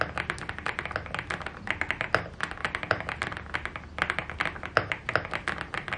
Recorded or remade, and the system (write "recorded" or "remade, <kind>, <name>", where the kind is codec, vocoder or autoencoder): recorded